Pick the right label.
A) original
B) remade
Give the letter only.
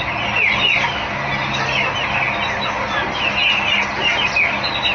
A